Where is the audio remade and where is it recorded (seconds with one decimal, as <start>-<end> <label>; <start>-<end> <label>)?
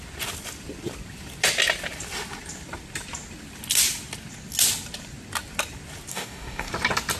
0.0-6.1 recorded; 6.1-6.7 remade; 6.7-7.2 recorded